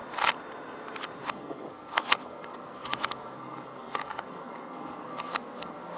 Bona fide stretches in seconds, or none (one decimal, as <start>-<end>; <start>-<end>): 0.0-1.3

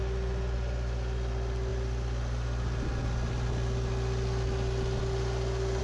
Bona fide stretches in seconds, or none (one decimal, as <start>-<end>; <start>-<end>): 0.0-5.8

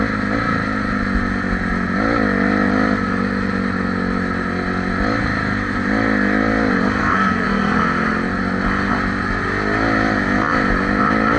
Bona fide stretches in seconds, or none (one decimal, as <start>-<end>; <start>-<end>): 0.0-7.0; 7.8-11.4

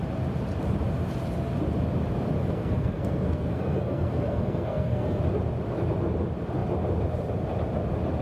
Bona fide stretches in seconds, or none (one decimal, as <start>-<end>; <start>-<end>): 0.0-2.4; 5.2-8.2

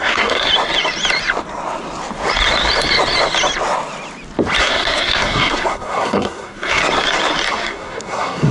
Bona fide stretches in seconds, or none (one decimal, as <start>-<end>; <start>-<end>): 0.5-4.6; 6.8-7.5

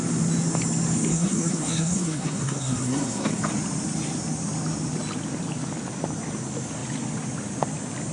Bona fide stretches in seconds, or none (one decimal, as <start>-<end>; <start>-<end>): 0.0-1.1; 3.4-8.1

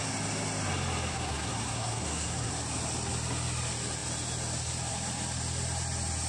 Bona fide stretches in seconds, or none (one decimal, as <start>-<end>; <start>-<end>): 0.0-1.1; 2.5-6.3